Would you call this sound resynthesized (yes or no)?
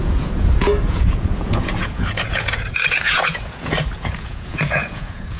yes